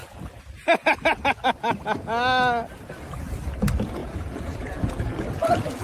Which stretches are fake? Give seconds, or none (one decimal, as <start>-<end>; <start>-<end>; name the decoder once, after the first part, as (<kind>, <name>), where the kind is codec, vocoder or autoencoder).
4.0-5.1 (vocoder, Vocos)